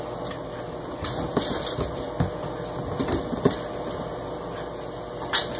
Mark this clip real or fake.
real